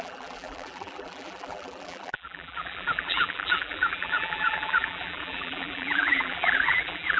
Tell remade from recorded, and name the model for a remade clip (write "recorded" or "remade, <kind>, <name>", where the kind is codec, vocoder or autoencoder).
remade, vocoder, BigVGAN v2